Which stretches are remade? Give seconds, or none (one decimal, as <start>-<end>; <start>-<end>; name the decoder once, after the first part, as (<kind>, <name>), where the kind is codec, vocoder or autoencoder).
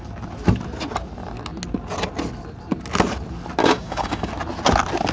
3.6-4.3 (codec, DAC)